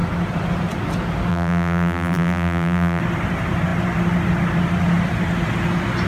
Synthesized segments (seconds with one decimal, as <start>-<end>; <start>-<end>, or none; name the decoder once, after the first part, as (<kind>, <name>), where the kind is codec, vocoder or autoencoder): 1.3-3.0 (vocoder, BigVGAN v2)